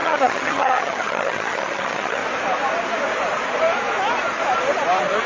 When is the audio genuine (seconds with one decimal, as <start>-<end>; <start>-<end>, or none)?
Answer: 2.2-5.3